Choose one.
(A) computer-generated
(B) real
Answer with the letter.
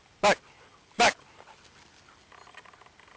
B